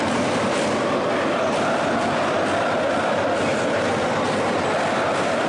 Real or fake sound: real